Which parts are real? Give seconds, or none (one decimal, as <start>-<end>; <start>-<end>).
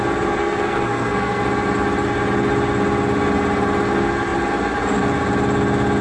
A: 0.0-0.4; 1.4-6.0